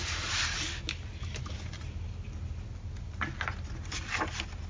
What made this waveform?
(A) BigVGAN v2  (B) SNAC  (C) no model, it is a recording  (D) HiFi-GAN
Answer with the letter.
C